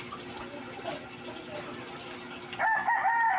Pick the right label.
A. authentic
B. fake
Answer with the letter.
A